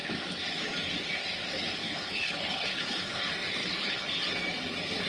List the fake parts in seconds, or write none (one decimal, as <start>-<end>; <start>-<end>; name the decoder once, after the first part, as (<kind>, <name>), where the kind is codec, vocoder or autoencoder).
1.8-3.2 (codec, HILCodec); 3.6-4.2